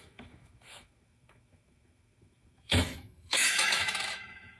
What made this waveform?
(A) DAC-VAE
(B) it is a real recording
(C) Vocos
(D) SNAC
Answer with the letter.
A